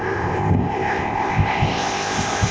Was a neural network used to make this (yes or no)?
yes